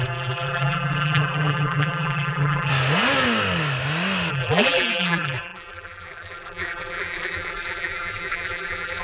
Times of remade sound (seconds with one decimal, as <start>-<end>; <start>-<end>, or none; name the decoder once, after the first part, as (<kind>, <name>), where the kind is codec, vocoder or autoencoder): 0.0-2.7 (vocoder, BigVGAN v2); 4.3-9.0